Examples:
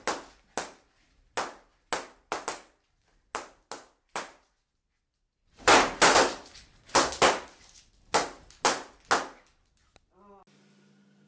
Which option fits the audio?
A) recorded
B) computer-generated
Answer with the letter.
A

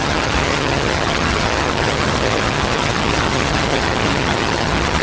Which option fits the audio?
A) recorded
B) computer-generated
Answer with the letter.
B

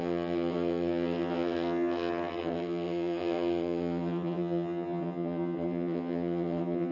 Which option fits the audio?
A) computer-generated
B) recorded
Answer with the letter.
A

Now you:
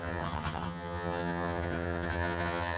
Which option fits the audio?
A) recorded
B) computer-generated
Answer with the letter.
B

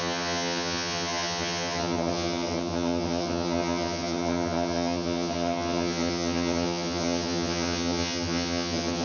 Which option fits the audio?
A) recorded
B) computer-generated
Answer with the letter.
B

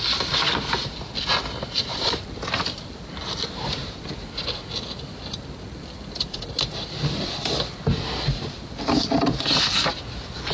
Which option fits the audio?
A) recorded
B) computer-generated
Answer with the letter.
A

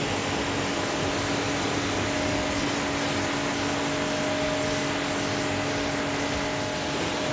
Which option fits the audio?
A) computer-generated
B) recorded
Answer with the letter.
B